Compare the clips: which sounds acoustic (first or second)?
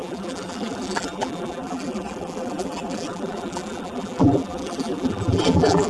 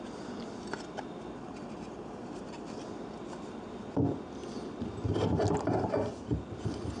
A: second